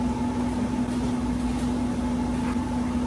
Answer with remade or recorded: recorded